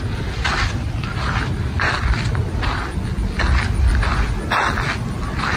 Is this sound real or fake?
real